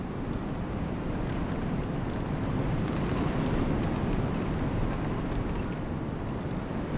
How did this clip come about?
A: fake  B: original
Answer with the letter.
B